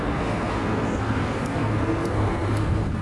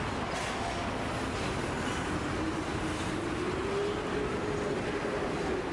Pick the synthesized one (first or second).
first